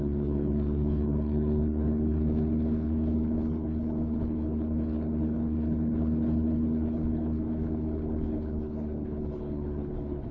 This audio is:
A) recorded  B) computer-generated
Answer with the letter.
B